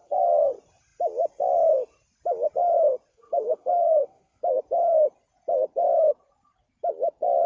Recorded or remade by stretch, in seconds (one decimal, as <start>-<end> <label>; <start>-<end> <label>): 0.0-0.5 remade; 0.5-3.1 recorded; 3.1-4.4 remade; 4.4-7.5 recorded